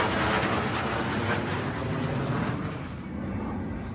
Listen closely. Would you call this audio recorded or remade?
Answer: recorded